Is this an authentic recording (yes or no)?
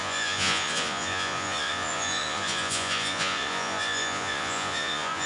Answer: no